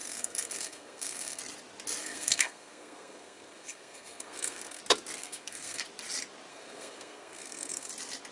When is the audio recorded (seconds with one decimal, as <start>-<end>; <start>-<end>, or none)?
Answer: 1.4-2.0; 4.8-5.2; 5.8-6.5; 7.9-8.3